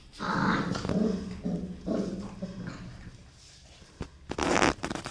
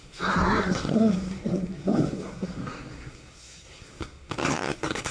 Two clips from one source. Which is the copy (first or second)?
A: second